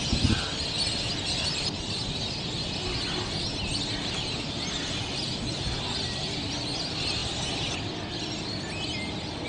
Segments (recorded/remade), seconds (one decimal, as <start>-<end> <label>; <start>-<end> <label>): 0.0-9.5 recorded